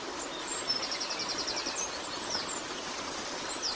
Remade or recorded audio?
recorded